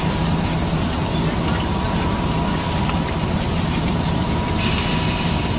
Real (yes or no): yes